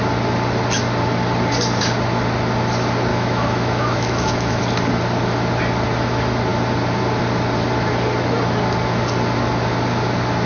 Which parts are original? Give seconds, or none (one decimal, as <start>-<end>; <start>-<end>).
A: 0.0-3.1; 4.6-10.5